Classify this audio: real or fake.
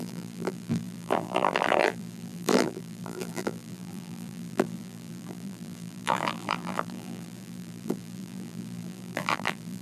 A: fake